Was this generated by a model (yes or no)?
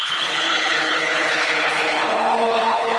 yes